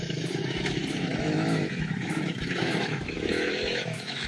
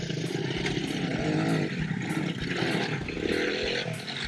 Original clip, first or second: second